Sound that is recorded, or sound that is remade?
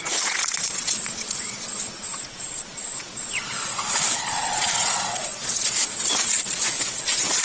remade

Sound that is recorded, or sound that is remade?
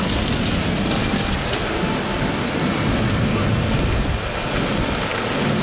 recorded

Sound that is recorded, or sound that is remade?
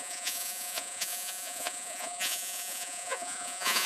remade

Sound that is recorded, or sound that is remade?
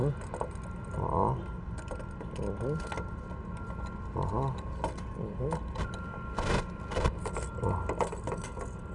recorded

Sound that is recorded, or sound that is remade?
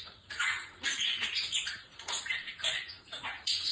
remade